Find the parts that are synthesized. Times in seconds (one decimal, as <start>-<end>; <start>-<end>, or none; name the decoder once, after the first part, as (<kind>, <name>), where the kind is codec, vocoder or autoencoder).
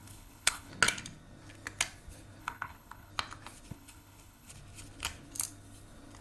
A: 0.0-0.7 (codec, HILCodec); 2.4-3.1; 3.7-4.5